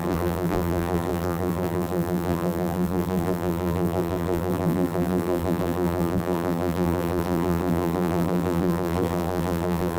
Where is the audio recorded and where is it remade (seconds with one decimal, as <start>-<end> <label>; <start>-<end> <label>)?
0.0-10.0 remade